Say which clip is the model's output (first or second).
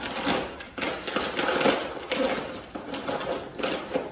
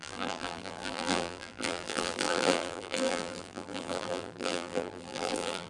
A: second